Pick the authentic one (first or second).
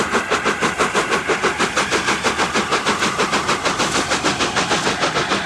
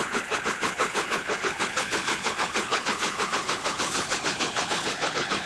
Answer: first